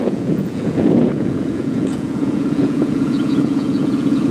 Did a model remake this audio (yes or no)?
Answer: yes